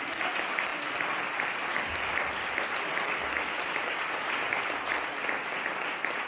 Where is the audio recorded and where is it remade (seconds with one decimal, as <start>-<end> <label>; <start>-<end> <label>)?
0.0-6.3 recorded